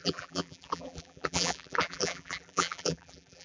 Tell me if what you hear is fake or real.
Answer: fake